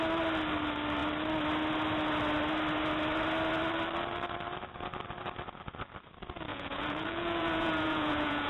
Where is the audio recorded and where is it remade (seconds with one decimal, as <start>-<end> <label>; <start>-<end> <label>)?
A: 0.0-6.5 recorded; 6.5-8.5 remade